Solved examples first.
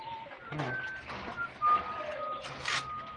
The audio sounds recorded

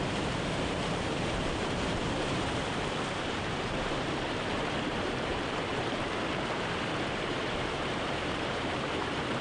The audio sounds remade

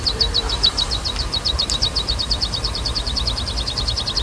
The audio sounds remade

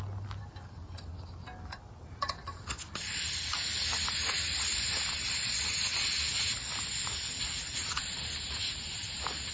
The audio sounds recorded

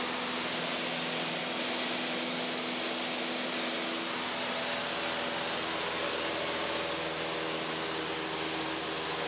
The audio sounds recorded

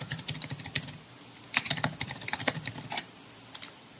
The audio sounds remade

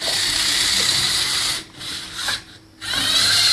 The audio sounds remade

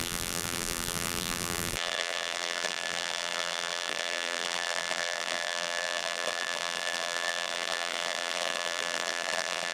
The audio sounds remade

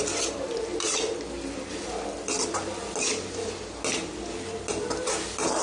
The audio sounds recorded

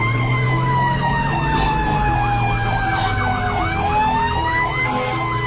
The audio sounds recorded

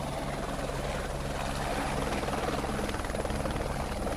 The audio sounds recorded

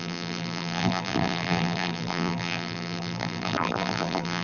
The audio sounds remade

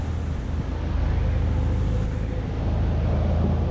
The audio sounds recorded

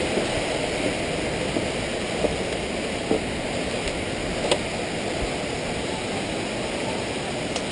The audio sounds recorded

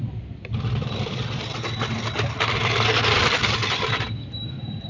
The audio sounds remade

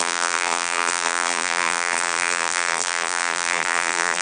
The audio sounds remade